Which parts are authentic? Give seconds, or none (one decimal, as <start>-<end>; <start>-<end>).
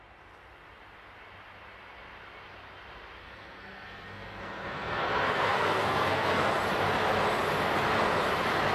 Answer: 0.0-3.2; 6.5-8.7